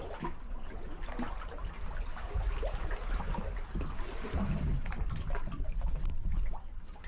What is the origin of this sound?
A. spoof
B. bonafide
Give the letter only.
B